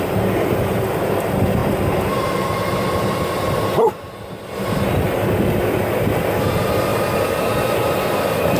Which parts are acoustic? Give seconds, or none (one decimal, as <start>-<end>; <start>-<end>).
0.0-1.6; 3.9-8.6